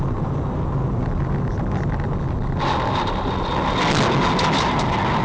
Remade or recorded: recorded